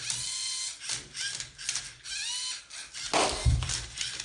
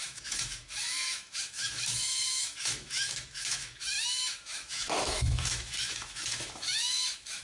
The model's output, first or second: second